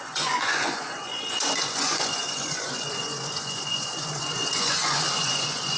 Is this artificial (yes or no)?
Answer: yes